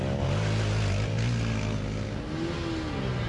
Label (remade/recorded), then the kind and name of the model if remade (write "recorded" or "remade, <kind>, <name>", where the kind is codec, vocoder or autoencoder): recorded